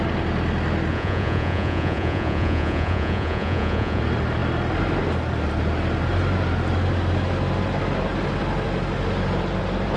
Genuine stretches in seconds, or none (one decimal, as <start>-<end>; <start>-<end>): 0.0-0.9; 4.0-10.0